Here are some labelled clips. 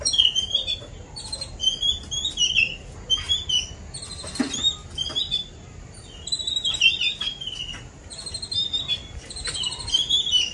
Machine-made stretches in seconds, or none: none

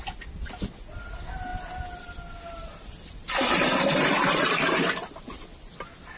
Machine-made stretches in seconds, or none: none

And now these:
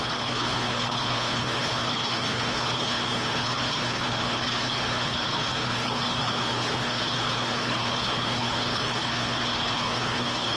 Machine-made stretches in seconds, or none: 0.0-10.6 (codec, HILCodec)